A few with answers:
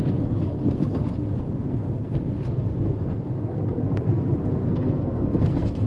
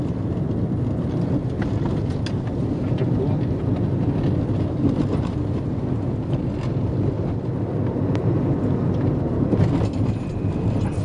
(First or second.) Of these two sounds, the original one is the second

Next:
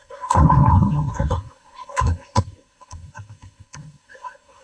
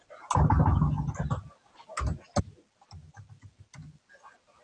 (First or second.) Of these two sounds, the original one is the second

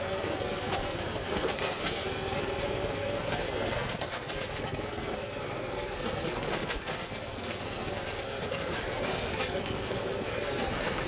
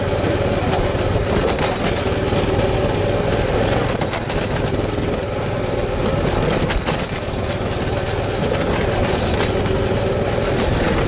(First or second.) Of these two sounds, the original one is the second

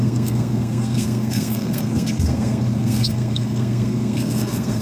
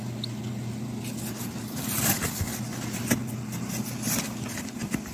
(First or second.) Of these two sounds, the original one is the second